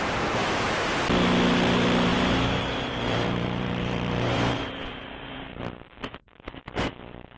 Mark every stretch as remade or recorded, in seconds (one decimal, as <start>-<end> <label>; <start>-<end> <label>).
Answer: 0.0-0.4 recorded; 0.4-0.9 remade; 0.9-2.1 recorded; 2.1-6.5 remade; 6.5-7.4 recorded